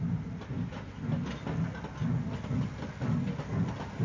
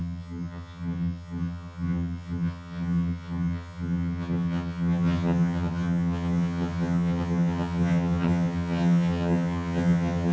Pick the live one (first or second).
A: first